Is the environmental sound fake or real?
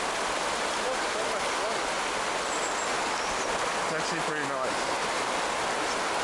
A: real